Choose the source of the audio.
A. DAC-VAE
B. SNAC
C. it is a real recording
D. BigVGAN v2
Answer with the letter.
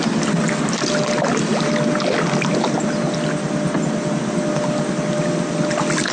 C